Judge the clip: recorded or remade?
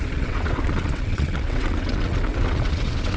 remade